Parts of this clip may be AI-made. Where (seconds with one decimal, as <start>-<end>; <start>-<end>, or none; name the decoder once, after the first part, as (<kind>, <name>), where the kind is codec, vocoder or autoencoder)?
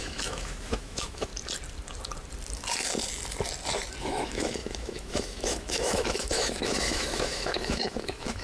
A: 0.0-1.3 (autoencoder, DAC-VAE); 4.0-8.4